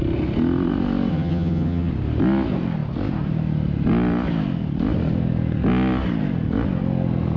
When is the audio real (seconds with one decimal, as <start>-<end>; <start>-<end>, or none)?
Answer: 0.0-1.1; 1.9-7.4